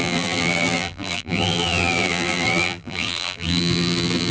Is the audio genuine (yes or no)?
no